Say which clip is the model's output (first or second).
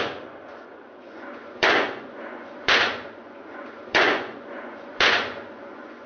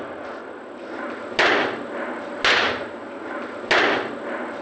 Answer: first